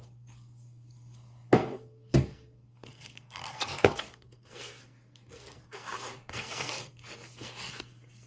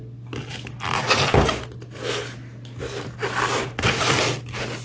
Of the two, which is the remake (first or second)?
first